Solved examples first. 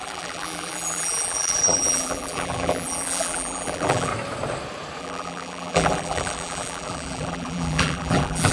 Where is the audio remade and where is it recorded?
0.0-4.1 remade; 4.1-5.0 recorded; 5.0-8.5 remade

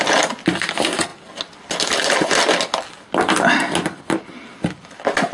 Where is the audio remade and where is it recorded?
0.0-5.3 recorded